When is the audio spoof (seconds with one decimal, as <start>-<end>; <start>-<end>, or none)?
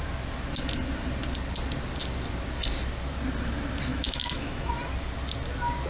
3.9-4.7